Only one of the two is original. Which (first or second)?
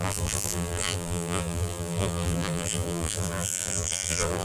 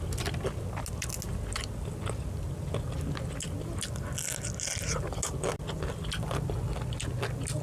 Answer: second